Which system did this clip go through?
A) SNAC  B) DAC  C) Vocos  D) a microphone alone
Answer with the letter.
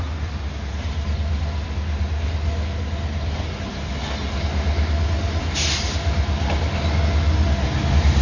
D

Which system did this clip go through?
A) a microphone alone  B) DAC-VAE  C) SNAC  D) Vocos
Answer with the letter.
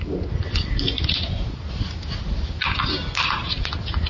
A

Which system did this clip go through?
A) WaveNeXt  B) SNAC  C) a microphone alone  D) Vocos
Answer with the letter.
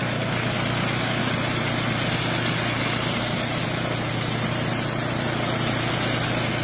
C